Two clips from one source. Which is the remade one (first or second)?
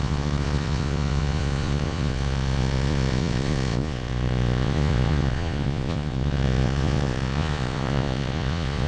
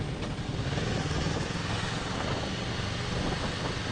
first